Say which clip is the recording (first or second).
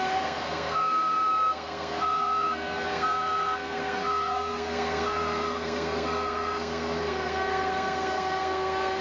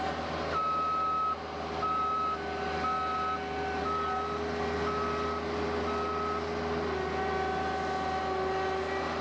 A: second